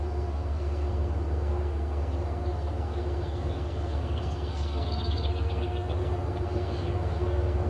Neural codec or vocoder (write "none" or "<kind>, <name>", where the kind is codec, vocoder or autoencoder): codec, SNAC